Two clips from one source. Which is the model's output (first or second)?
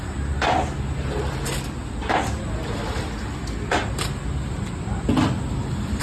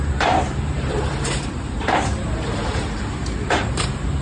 second